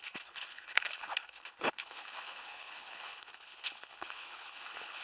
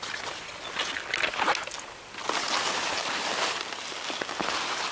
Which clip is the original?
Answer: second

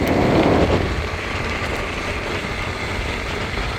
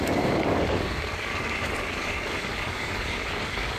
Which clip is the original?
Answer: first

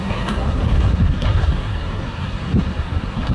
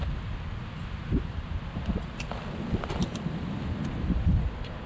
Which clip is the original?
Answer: second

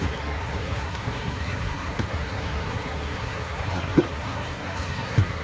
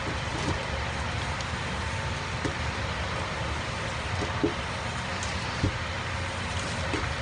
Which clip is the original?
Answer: second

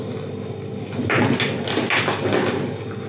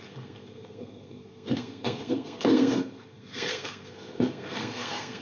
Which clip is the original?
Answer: first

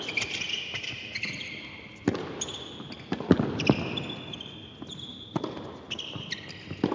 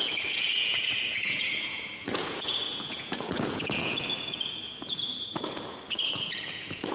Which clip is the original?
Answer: first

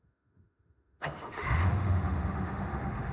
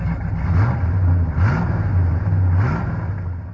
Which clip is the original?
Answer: second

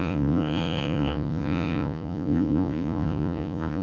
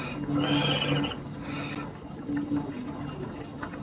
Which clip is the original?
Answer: second